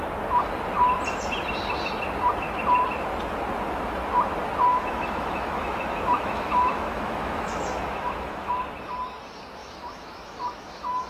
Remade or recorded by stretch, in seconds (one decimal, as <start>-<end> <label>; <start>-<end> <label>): 0.0-4.7 recorded; 4.7-8.5 remade; 8.5-9.6 recorded; 9.6-11.1 remade